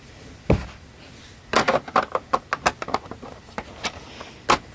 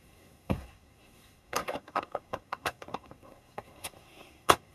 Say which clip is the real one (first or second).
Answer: first